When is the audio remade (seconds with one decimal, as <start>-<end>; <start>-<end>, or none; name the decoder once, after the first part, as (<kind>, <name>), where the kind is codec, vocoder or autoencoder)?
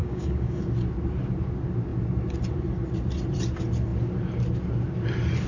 0.0-0.6 (codec, DAC)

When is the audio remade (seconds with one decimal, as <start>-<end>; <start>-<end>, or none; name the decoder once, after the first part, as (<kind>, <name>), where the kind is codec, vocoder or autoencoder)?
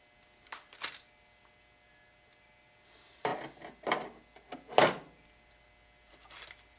none